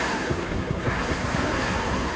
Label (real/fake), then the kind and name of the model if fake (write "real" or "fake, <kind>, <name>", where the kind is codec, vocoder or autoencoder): fake, codec, SNAC